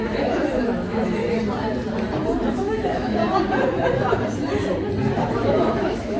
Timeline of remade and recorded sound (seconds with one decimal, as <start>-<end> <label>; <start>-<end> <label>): 0.0-1.2 remade; 1.2-2.5 recorded; 2.5-3.2 remade; 3.2-5.2 recorded; 5.2-6.2 remade